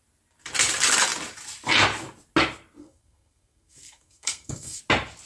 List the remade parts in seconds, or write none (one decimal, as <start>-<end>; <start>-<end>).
2.8-4.8